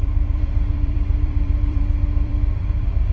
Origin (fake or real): fake